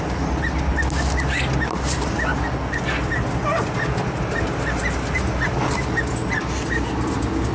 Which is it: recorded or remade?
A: recorded